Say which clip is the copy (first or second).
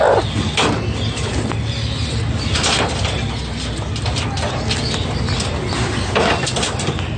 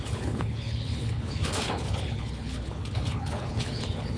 second